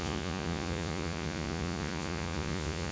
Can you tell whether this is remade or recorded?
remade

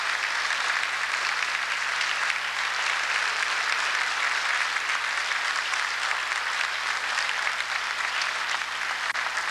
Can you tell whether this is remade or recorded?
recorded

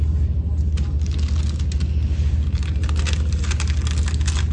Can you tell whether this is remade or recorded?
recorded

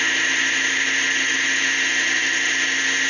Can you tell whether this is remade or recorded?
recorded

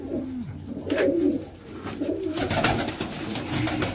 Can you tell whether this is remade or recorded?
recorded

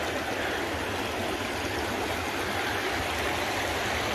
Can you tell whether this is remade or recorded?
recorded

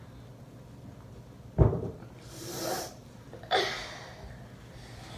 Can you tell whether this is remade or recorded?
recorded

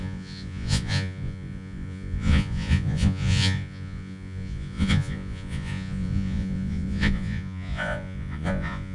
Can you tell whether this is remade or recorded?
remade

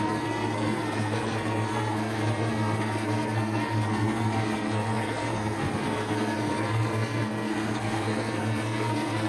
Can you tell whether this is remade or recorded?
remade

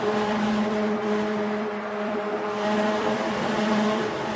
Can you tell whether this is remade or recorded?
remade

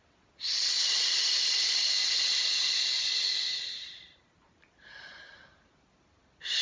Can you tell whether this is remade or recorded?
recorded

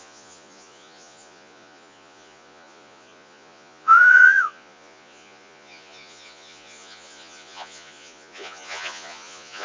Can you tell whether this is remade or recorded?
remade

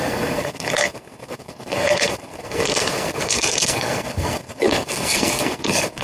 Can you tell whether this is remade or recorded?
remade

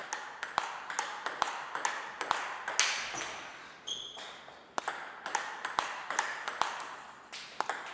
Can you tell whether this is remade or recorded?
recorded